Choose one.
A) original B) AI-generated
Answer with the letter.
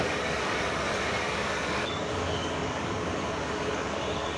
B